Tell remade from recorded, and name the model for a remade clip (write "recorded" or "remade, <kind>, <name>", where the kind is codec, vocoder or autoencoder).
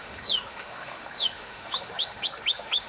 remade, autoencoder, DAC-VAE